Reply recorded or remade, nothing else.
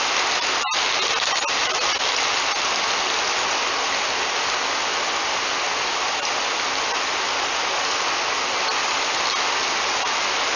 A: recorded